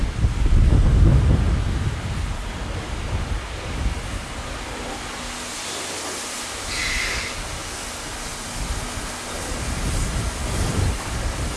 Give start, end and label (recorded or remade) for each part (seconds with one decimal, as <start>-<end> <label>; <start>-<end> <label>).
0.0-11.6 recorded